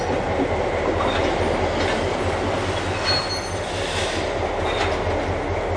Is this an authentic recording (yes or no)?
yes